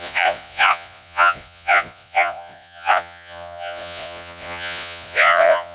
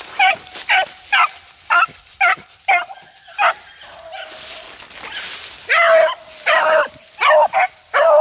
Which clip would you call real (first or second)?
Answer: second